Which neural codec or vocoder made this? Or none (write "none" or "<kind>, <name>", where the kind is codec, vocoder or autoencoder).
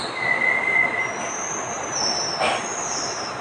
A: none